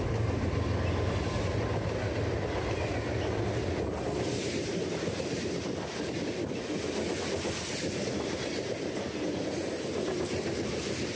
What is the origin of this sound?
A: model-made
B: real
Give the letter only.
B